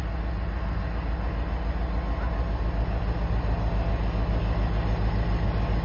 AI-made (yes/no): no